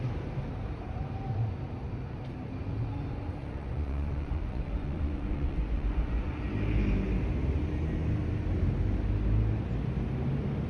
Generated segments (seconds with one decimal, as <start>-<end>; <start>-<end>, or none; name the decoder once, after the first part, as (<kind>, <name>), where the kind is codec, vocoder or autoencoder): 3.4-6.4 (vocoder, Vocos)